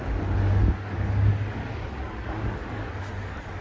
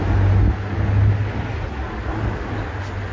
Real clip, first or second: second